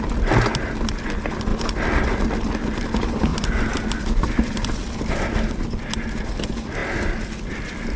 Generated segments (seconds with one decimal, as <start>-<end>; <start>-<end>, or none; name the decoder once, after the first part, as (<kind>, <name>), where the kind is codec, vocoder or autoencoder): 1.5-2.2 (vocoder, BigVGAN v2); 3.3-5.5